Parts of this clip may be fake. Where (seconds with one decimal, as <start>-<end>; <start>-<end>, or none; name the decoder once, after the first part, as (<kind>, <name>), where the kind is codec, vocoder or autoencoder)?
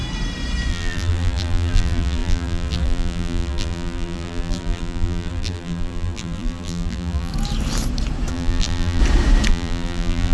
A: 0.7-7.3 (vocoder, BigVGAN v2); 8.3-9.0; 9.5-10.3